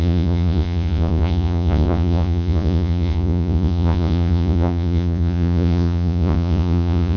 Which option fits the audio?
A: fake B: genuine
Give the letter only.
A